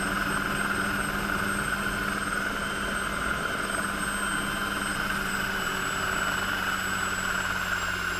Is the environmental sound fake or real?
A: real